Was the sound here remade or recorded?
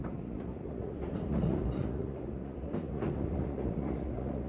remade